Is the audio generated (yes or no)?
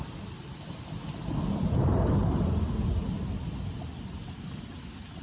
no